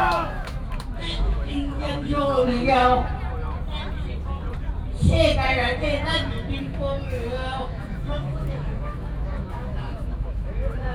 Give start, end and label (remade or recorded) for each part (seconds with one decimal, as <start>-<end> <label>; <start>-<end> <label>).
0.0-2.8 remade; 2.8-6.6 recorded; 6.6-10.9 remade